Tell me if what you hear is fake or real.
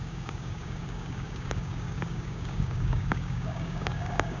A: fake